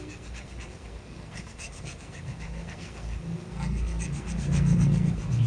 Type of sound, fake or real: fake